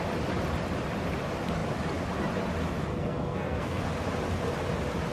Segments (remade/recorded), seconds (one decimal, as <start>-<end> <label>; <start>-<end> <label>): 0.0-2.9 recorded; 2.9-3.8 remade; 3.8-5.1 recorded